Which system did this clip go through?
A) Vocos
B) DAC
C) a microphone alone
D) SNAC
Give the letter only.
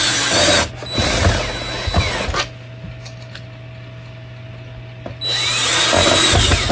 C